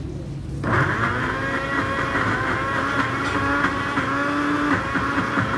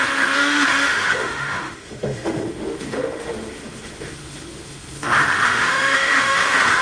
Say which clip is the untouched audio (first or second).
first